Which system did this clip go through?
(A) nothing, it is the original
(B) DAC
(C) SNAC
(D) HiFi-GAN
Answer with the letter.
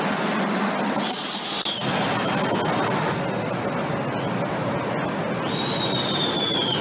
A